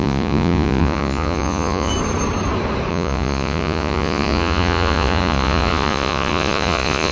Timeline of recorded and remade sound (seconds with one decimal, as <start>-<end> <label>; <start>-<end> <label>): 0.0-1.9 remade; 1.9-2.9 recorded; 2.9-7.1 remade